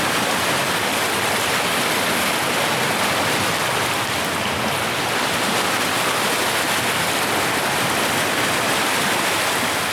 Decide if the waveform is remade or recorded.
recorded